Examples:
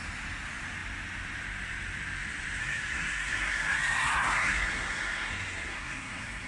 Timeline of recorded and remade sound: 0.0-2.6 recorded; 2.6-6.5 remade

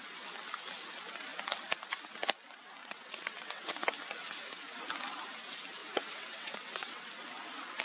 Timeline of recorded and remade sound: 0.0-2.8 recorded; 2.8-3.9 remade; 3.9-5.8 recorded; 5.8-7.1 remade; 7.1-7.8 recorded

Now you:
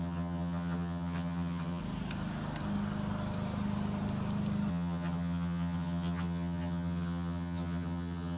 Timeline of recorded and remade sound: 0.0-1.8 remade; 1.8-4.7 recorded; 4.7-8.4 remade